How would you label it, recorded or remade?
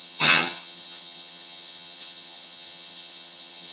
remade